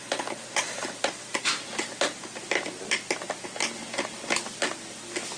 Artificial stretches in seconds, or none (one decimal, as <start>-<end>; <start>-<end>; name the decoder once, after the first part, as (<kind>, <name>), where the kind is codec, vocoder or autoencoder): none